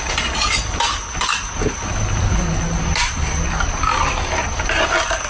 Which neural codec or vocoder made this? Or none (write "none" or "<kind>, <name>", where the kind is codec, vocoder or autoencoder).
none